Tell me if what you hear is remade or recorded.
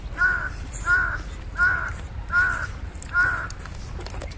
recorded